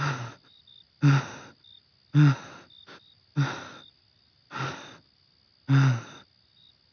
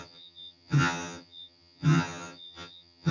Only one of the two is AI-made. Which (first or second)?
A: second